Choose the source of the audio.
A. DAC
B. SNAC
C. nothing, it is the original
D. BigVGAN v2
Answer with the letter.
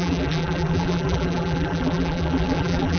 D